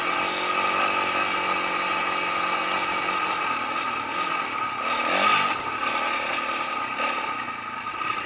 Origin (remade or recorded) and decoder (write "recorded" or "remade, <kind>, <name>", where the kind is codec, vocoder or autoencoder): recorded